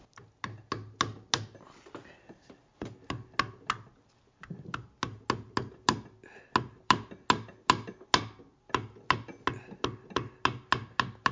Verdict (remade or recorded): recorded